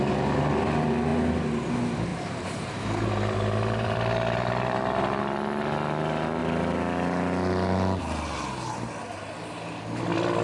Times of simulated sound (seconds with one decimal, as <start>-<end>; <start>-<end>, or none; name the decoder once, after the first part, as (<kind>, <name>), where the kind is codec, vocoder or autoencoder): 2.1-5.2 (vocoder, BigVGAN v2)